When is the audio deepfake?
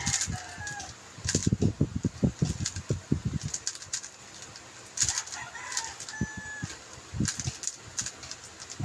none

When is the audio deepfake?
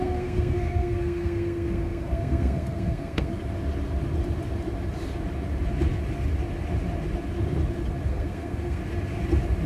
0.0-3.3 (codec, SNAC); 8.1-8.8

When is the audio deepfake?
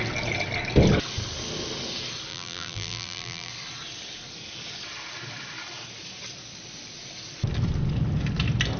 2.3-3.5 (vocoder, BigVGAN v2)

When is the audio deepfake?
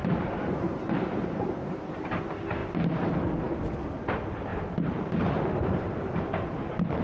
0.0-2.2 (vocoder, BigVGAN v2); 2.6-3.6; 4.5-5.4